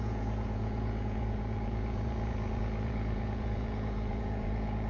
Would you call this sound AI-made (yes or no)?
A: yes